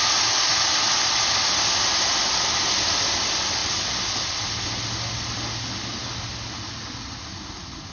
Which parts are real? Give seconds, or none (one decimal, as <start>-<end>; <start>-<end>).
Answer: 0.0-7.9